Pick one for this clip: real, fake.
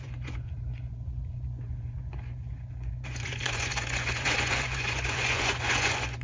fake